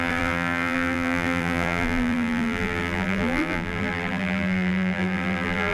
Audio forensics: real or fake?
fake